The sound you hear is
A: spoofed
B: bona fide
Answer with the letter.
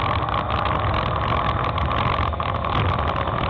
B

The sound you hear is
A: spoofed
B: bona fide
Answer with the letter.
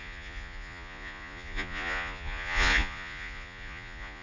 A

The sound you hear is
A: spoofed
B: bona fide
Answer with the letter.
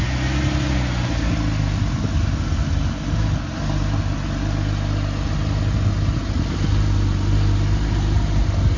B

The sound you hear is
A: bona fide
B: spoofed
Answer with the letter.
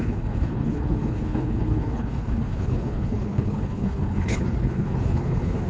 B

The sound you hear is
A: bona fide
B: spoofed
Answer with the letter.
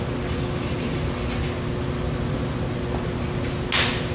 A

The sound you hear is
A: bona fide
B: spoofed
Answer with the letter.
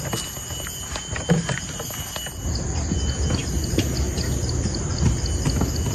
A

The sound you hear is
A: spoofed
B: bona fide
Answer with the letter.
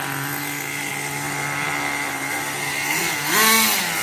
B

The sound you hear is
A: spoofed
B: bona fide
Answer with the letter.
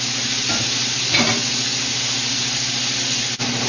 B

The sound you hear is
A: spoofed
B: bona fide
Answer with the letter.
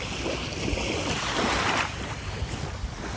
B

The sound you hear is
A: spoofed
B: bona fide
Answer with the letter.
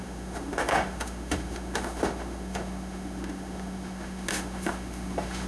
A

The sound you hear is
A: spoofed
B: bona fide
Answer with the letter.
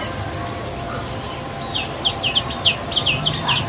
B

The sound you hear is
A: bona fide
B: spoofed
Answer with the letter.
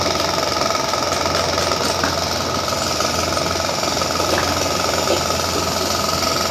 A